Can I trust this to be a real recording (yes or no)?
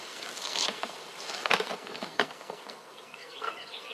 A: no